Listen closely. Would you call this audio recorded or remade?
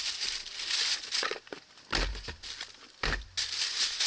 recorded